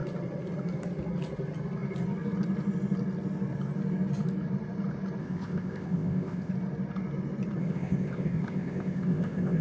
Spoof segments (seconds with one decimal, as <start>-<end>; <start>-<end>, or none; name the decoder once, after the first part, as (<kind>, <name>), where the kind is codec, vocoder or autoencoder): 5.2-6.5 (codec, ZipCodec); 7.6-9.6